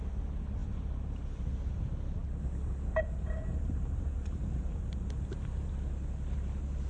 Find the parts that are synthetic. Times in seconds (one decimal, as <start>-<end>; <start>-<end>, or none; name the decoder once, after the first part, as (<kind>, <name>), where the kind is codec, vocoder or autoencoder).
0.6-1.4 (vocoder, BigVGAN v2); 2.9-4.8